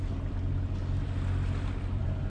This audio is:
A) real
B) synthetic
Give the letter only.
A